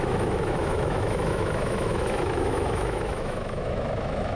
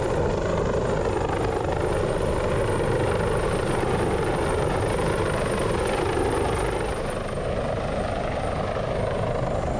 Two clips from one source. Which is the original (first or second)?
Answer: second